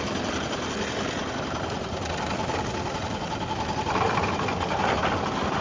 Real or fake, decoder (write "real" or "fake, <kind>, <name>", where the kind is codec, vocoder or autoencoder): real